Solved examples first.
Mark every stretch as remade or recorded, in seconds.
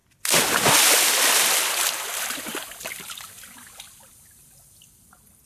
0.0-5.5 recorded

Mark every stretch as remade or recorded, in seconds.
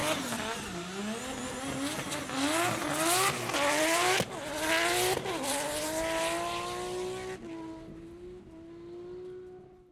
0.0-9.9 recorded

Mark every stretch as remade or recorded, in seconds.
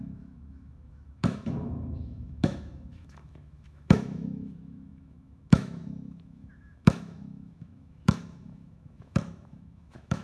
0.0-10.2 remade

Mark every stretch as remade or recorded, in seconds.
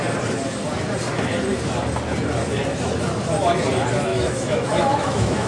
0.0-4.1 recorded; 4.1-5.5 remade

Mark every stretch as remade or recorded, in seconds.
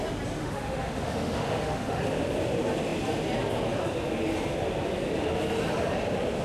0.0-0.4 recorded; 0.4-2.0 remade; 2.0-6.4 recorded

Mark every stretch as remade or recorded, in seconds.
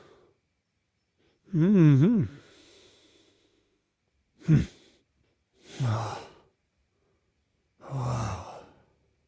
0.0-1.4 recorded; 1.4-4.0 remade; 4.0-9.3 recorded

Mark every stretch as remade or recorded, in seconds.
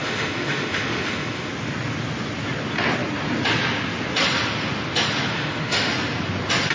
0.0-1.5 remade; 1.5-5.3 recorded; 5.3-5.9 remade; 5.9-6.7 recorded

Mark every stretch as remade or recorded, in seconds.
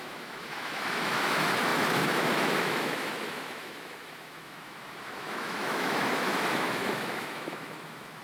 0.0-8.2 remade